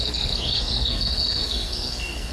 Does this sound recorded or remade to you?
remade